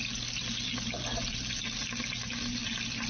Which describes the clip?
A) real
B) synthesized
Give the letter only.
A